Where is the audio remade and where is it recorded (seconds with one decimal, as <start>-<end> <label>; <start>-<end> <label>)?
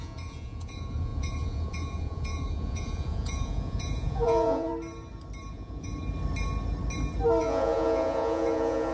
0.0-4.7 remade; 4.7-5.5 recorded; 5.5-5.9 remade; 5.9-7.4 recorded; 7.4-8.9 remade